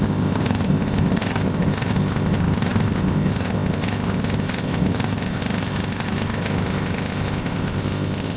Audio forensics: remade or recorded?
remade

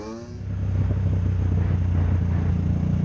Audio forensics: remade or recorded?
recorded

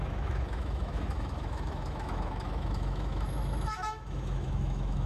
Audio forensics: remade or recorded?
remade